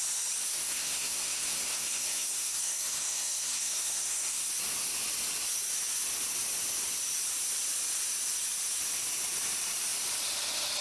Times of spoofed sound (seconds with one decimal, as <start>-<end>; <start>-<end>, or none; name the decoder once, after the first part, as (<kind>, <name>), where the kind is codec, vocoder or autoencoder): 0.5-4.5 (codec, SNAC)